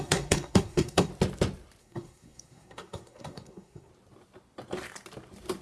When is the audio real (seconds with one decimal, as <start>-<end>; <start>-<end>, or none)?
1.1-1.8; 3.9-5.6